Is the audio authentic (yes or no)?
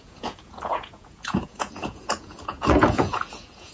no